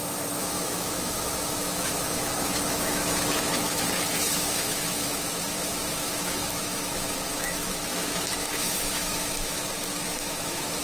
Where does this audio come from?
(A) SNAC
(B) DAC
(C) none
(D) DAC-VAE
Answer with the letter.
D